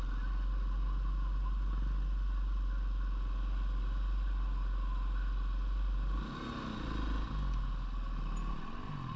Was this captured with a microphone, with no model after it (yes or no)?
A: yes